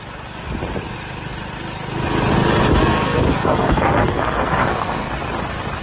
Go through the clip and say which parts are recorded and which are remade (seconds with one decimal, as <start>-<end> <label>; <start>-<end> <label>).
0.0-2.8 recorded; 2.8-5.1 remade; 5.1-5.8 recorded